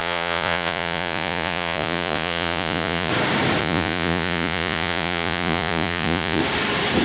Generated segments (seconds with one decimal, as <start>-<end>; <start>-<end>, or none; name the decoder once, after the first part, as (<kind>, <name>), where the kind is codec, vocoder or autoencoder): 0.0-3.1 (vocoder, Vocos); 3.6-6.4